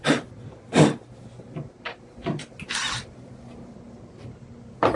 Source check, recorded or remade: recorded